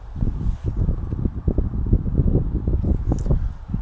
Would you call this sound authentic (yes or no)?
yes